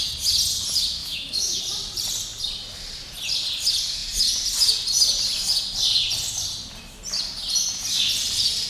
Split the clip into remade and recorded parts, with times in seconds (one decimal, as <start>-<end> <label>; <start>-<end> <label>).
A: 0.0-1.0 recorded; 1.0-1.6 remade; 1.6-8.7 recorded